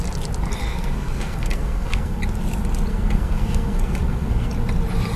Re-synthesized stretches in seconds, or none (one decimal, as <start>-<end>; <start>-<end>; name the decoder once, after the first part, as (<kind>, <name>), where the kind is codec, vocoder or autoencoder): 0.6-2.2 (codec, SNAC); 2.9-4.5